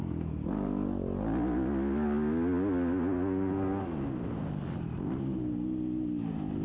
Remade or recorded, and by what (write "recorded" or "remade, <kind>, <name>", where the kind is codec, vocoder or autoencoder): recorded